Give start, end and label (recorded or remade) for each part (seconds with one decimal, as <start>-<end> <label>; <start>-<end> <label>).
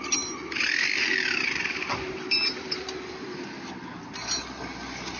0.0-1.1 recorded; 1.1-3.4 remade; 3.4-5.2 recorded